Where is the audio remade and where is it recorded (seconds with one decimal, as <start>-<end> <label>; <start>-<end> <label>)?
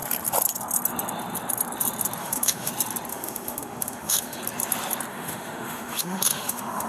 0.0-2.2 recorded; 2.2-2.7 remade; 2.7-3.1 recorded; 3.1-4.4 remade; 4.4-5.1 recorded; 5.1-6.9 remade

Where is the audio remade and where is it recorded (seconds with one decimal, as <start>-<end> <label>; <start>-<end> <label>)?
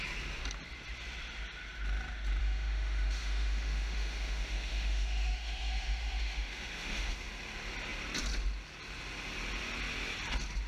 0.0-2.4 recorded; 2.4-7.3 remade; 7.3-10.7 recorded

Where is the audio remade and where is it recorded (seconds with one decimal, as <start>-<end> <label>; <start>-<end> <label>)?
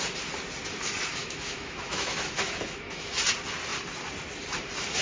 0.0-1.2 recorded; 1.2-3.1 remade; 3.1-5.0 recorded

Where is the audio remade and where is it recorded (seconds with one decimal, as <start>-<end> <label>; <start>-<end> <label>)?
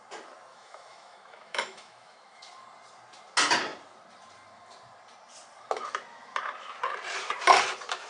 0.0-0.5 recorded; 0.5-2.4 remade; 2.4-8.1 recorded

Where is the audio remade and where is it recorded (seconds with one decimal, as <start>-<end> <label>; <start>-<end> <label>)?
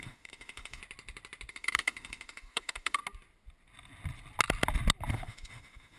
0.0-0.8 remade; 0.8-1.5 recorded; 1.5-3.0 remade; 3.0-5.1 recorded; 5.1-6.0 remade